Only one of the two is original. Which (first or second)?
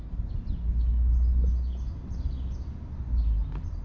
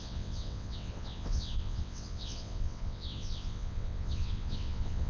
first